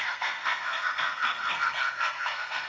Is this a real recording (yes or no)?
no